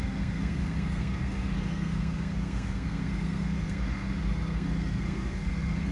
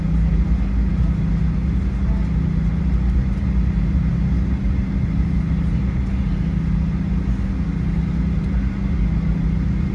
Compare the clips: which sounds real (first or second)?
second